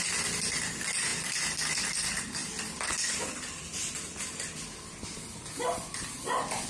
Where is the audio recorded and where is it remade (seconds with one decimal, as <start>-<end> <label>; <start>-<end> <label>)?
0.0-6.7 recorded